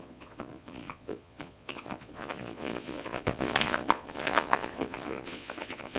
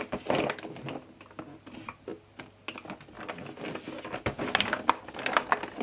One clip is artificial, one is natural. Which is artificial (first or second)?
first